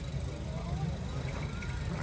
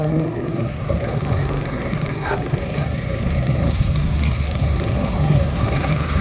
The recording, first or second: first